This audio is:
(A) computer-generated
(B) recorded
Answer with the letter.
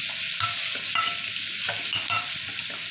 B